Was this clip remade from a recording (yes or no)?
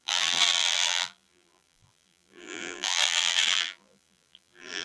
yes